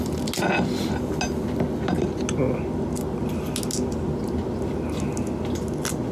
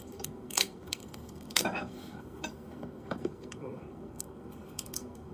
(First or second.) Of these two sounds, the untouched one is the first